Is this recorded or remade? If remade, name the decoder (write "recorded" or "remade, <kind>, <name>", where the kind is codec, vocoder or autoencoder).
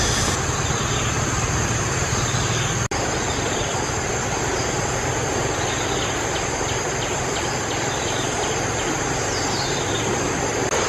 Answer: recorded